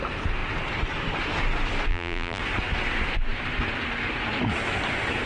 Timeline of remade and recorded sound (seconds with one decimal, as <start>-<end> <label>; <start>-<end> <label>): 0.0-1.9 recorded; 1.9-2.4 remade; 2.4-5.3 recorded